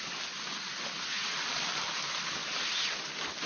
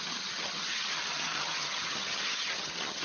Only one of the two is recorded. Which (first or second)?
first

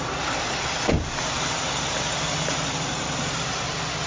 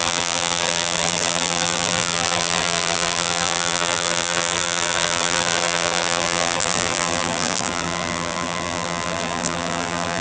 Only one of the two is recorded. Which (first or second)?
first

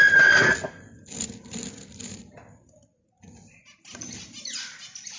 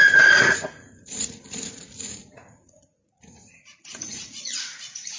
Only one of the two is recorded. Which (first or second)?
first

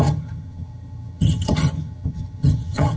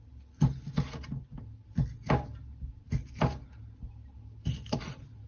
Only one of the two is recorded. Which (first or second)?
second